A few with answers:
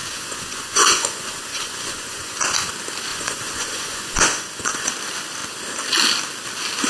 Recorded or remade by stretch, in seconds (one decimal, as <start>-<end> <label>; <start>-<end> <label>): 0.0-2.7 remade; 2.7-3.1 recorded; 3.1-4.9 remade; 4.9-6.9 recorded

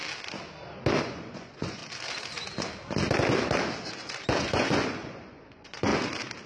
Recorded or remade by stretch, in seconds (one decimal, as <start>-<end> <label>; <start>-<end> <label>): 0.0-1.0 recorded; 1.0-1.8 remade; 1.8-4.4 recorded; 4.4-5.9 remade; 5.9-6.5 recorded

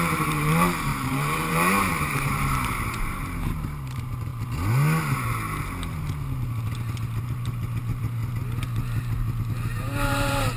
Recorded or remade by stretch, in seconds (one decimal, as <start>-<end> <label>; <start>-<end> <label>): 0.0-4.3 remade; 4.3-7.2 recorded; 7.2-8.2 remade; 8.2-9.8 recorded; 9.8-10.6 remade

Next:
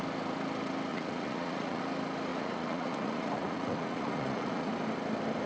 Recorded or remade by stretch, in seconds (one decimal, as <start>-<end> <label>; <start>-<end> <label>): 0.0-0.9 recorded; 0.9-1.8 remade; 1.8-2.3 recorded; 2.3-4.7 remade; 4.7-5.5 recorded

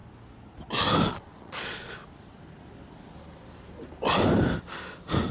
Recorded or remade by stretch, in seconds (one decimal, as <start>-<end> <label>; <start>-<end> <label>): 0.0-1.1 recorded; 1.1-2.0 remade; 2.0-5.3 recorded

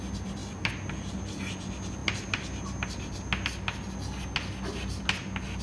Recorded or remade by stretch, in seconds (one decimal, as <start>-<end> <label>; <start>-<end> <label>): 0.0-5.6 recorded